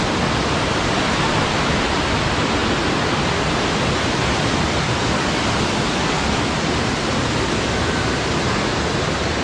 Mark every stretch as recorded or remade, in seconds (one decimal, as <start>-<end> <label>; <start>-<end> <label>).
0.0-9.4 recorded